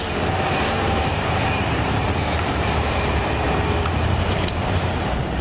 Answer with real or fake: fake